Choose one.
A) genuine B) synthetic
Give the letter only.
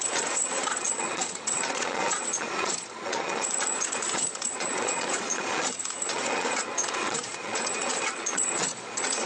B